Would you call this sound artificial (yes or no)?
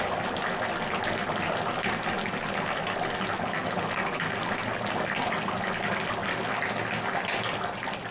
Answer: no